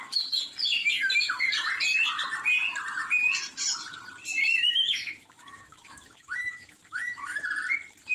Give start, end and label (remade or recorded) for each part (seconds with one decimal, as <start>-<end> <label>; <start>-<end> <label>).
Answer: 0.0-0.8 recorded; 0.8-1.5 remade; 1.5-4.3 recorded; 4.3-7.4 remade; 7.4-8.1 recorded